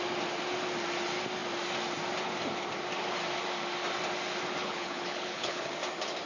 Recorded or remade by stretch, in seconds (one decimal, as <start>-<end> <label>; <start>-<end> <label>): 0.0-4.6 recorded; 4.6-5.7 remade; 5.7-6.3 recorded